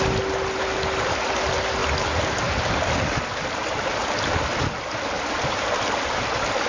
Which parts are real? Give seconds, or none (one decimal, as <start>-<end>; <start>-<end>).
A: 0.0-6.7